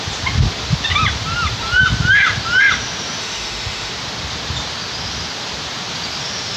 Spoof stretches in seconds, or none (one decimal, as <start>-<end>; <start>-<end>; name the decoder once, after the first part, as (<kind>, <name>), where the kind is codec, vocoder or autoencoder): 3.2-3.9 (autoencoder, DAC-VAE)